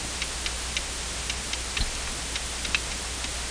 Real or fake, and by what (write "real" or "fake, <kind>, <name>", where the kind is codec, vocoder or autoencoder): real